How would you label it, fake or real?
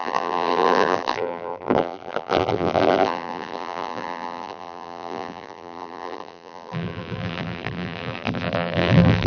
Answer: fake